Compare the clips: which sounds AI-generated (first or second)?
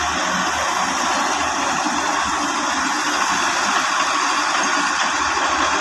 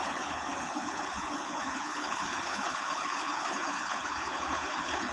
second